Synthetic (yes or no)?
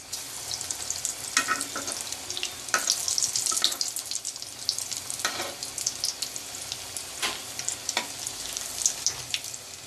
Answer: no